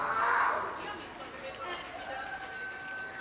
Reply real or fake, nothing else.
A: real